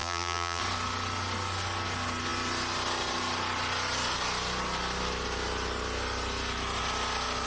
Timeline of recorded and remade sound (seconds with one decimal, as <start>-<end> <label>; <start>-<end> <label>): 0.0-0.6 remade; 0.6-7.5 recorded